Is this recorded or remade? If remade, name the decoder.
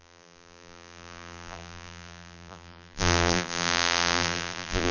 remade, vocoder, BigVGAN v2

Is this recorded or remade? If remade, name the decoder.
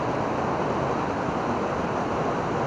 recorded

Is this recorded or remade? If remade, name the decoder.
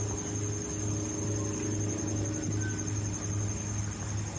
recorded